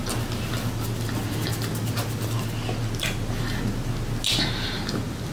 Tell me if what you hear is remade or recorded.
recorded